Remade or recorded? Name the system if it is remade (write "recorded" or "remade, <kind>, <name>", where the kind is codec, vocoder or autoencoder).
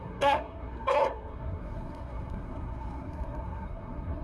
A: remade, codec, SNAC